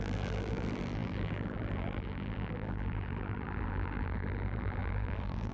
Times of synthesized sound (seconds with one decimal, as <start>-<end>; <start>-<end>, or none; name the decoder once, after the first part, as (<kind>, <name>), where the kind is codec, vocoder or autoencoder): 0.0-5.5 (vocoder, BigVGAN v2)